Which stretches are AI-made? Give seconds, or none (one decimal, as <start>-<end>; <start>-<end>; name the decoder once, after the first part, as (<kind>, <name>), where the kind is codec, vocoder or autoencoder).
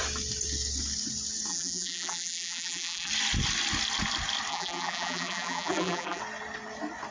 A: 1.5-3.1 (vocoder, BigVGAN v2); 4.5-6.2